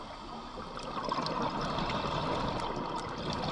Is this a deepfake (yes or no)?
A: no